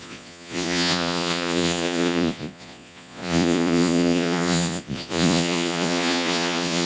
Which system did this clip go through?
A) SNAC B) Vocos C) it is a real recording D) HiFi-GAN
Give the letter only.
B